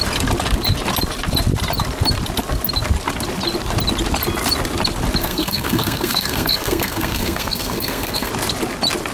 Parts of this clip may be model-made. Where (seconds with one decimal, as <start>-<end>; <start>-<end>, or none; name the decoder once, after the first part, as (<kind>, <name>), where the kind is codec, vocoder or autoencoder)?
5.2-8.3 (codec, SNAC)